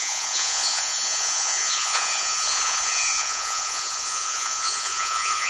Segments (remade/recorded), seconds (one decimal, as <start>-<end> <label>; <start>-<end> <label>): 0.0-5.5 remade